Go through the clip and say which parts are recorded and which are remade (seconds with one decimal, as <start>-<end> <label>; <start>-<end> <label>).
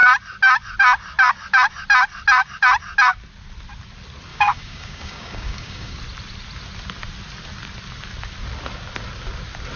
0.0-4.3 recorded; 4.3-6.0 remade; 6.0-9.8 recorded